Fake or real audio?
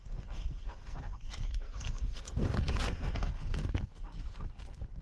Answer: fake